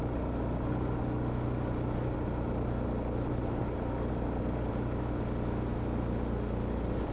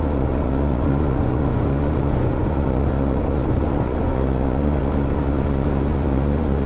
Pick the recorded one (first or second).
first